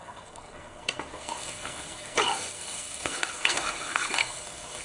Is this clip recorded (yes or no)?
no